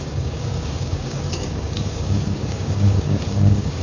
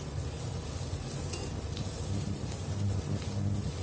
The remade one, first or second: first